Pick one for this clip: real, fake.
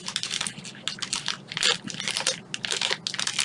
real